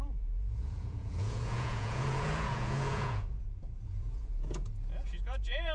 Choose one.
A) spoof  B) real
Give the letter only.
A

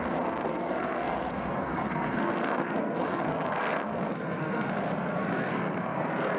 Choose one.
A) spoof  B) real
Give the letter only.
A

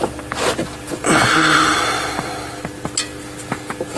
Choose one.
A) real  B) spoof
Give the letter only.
A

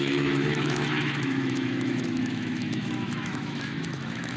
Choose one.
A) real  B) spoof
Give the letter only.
B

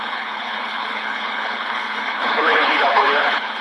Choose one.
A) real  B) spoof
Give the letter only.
B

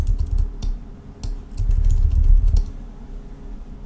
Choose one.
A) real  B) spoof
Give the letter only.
A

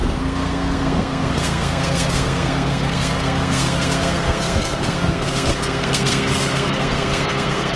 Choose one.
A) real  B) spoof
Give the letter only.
B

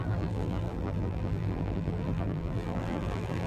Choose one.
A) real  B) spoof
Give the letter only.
B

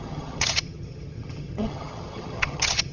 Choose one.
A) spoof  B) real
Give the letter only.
A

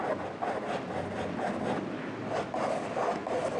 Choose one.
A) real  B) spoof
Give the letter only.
A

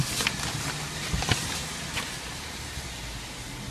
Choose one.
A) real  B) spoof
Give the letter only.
A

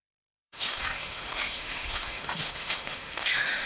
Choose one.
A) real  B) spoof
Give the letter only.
B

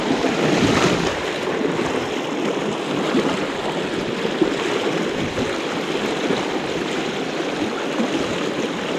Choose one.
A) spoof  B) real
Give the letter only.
B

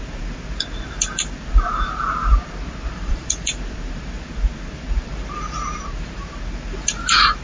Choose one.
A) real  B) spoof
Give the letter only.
B